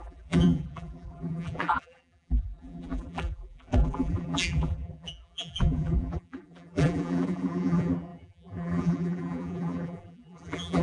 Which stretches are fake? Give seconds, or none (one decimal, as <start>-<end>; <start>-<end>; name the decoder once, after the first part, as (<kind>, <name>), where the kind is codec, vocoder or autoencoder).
0.0-10.8 (vocoder, BigVGAN v2)